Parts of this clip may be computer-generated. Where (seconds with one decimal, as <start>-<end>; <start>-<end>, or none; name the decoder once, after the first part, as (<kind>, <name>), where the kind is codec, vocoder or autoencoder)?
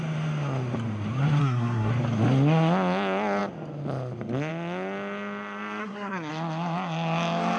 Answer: 1.4-1.9 (codec, SNAC); 5.8-6.3